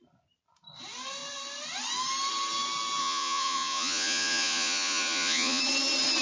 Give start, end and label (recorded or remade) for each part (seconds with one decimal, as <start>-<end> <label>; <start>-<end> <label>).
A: 0.0-3.0 recorded; 3.0-5.6 remade; 5.6-6.2 recorded